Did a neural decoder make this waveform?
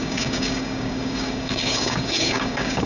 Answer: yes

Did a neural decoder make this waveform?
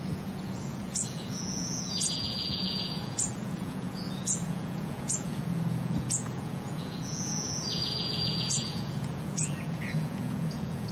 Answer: yes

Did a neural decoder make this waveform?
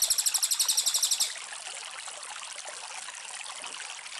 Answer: no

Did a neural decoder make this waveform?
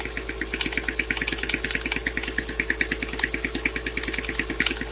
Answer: no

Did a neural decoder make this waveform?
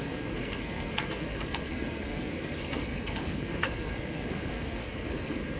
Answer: yes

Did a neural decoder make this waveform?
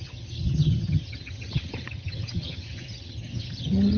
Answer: yes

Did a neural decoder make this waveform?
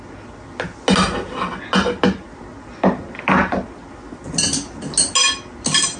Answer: no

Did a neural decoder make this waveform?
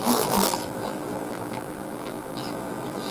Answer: yes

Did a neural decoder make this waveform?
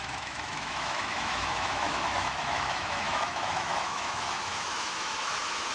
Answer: yes